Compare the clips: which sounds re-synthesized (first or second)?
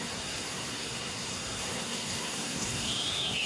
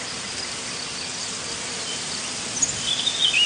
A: first